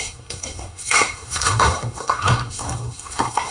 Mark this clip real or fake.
fake